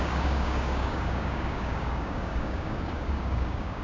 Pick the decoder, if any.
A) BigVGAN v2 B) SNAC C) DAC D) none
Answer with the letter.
C